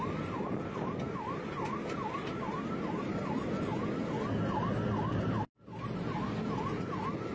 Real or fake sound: real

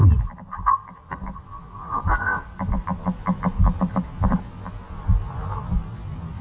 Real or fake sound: real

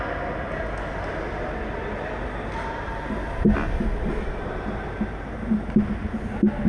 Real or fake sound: real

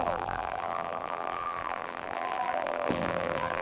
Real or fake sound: fake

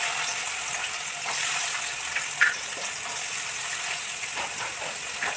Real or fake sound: fake